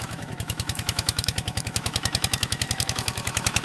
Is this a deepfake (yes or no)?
yes